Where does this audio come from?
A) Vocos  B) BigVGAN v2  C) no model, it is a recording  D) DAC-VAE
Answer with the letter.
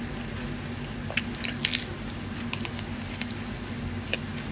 C